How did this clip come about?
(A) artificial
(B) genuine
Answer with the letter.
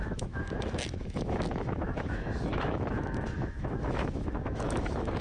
A